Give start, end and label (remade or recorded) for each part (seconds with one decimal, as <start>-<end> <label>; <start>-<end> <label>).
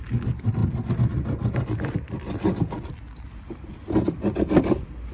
0.0-5.1 recorded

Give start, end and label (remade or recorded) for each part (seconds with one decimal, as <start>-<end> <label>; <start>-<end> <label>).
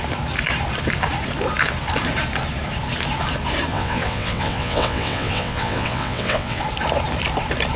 0.0-3.7 recorded; 3.7-6.6 remade; 6.6-7.8 recorded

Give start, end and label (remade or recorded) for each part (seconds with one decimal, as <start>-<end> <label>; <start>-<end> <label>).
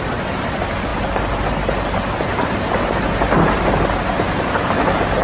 0.0-5.2 recorded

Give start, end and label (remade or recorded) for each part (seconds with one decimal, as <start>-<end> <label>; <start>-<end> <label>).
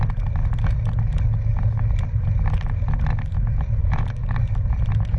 0.0-3.8 recorded; 3.8-4.4 remade; 4.4-5.2 recorded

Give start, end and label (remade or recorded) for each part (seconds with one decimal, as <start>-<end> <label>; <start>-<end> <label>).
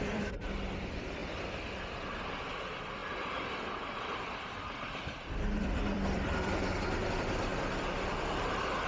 0.0-1.2 remade; 1.2-2.4 recorded; 2.4-7.5 remade; 7.5-8.4 recorded; 8.4-8.9 remade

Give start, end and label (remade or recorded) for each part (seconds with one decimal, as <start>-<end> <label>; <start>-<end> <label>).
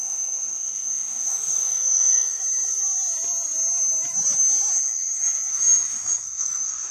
0.0-2.4 remade; 2.4-5.5 recorded; 5.5-6.9 remade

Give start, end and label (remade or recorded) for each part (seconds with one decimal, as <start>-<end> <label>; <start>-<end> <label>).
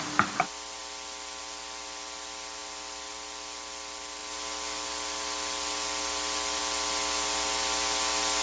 0.0-8.4 recorded